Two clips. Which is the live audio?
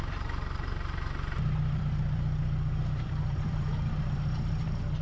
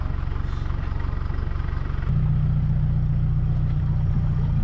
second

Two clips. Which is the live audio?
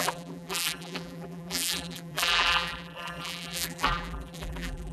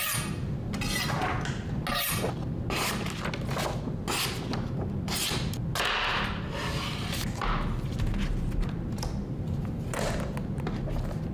second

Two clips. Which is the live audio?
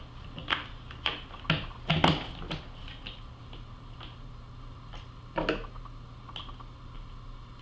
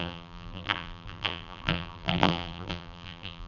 first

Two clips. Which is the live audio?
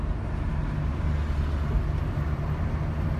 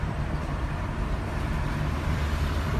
first